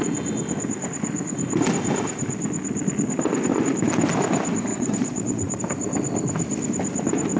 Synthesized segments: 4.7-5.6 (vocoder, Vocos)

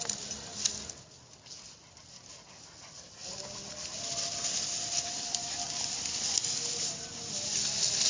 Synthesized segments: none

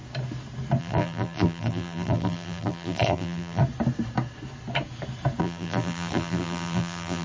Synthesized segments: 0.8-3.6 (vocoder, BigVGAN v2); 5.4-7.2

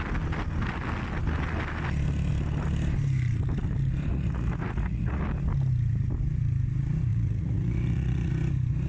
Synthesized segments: 4.1-5.2 (vocoder, Vocos); 7.1-8.3